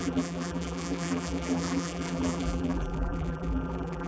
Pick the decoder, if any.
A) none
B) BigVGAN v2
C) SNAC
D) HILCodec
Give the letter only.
B